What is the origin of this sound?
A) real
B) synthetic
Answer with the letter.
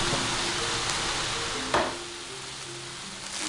A